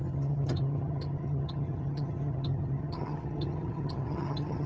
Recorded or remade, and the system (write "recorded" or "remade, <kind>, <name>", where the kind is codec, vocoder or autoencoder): remade, vocoder, HiFi-GAN